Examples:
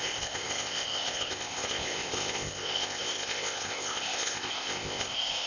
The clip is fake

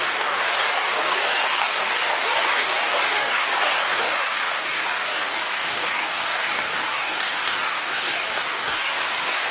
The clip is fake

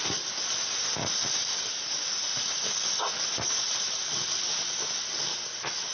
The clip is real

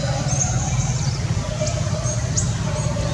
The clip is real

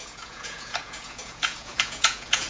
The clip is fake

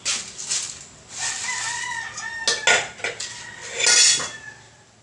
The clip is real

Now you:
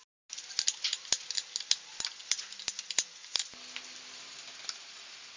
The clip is real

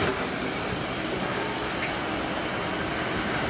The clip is real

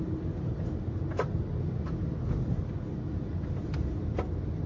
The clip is real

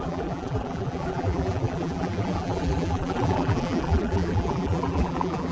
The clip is fake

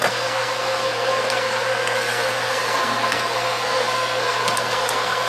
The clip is fake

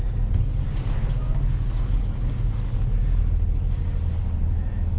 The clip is real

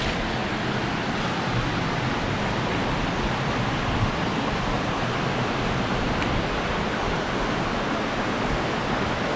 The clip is real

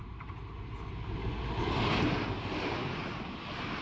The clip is real